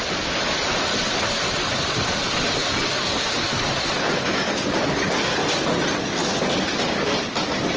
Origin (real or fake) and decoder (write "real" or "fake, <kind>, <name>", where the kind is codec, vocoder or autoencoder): fake, vocoder, BigVGAN v2